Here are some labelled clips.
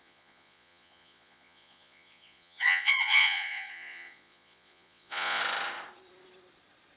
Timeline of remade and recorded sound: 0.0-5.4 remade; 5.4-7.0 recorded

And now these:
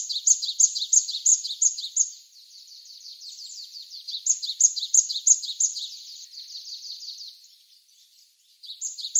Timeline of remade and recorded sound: 0.0-9.2 recorded